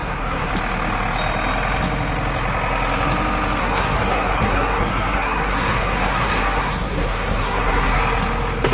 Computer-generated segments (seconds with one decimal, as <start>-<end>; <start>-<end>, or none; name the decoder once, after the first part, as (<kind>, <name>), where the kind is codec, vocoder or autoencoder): 0.0-0.5 (codec, SNAC); 3.6-8.0